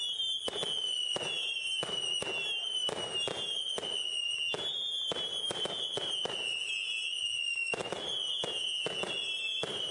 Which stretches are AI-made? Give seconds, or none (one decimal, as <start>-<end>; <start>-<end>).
none